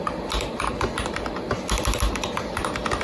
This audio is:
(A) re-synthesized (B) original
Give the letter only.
B